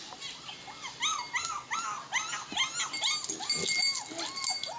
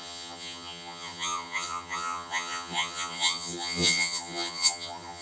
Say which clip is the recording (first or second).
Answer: first